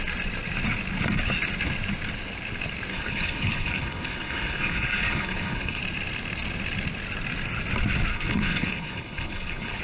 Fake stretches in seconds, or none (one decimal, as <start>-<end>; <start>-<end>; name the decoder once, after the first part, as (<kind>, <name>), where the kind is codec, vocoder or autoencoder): 2.9-5.8 (codec, HILCodec); 8.1-9.8